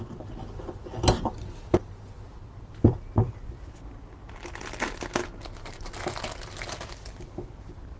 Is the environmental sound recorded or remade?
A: recorded